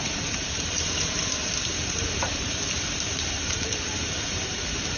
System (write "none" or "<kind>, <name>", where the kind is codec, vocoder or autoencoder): vocoder, BigVGAN v2